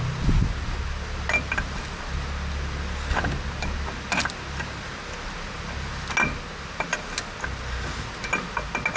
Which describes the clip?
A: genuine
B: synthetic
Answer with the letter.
A